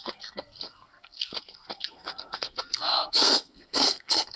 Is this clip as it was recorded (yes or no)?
no